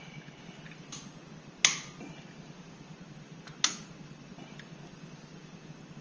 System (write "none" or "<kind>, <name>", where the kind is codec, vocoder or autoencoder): none